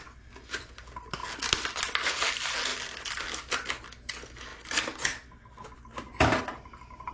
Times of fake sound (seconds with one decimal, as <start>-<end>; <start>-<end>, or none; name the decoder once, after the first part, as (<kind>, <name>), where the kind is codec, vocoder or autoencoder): none